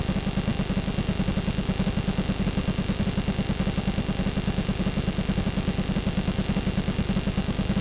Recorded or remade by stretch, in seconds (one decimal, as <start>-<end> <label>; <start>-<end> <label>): 0.0-7.8 recorded